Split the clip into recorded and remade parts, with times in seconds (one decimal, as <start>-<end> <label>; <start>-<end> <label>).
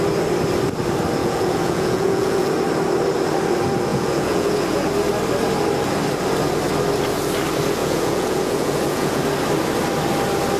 0.0-1.2 recorded; 1.2-2.5 remade; 2.5-3.9 recorded; 3.9-4.8 remade; 4.8-7.8 recorded; 7.8-9.2 remade; 9.2-10.6 recorded